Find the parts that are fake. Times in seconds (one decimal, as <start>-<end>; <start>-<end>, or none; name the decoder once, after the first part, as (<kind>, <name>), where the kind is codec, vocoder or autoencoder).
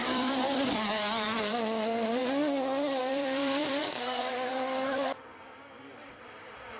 0.0-2.2 (vocoder, BigVGAN v2); 3.0-6.8